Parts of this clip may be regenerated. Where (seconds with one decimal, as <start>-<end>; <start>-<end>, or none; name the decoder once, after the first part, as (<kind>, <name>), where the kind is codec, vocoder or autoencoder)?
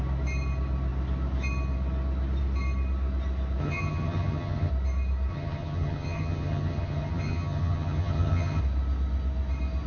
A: 3.6-4.7 (vocoder, HiFi-GAN); 5.3-8.6